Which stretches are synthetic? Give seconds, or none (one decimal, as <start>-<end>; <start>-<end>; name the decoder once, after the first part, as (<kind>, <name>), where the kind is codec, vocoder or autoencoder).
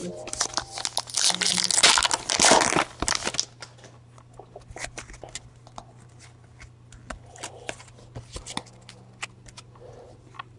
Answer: none